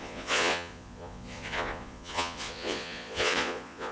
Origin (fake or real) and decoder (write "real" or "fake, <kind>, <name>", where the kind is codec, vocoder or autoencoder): fake, vocoder, Vocos